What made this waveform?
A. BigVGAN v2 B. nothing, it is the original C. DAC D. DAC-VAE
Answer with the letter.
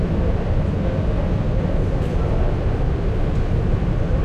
B